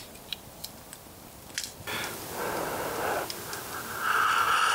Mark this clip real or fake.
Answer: real